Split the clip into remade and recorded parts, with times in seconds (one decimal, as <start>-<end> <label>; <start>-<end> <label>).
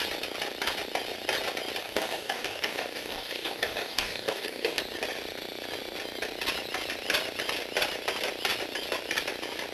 0.0-1.8 recorded; 1.8-4.8 remade; 4.8-9.7 recorded